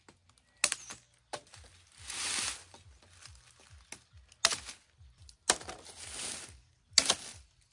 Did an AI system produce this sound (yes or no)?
no